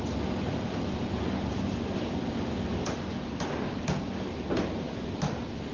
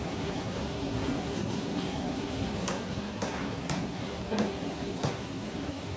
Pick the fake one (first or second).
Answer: second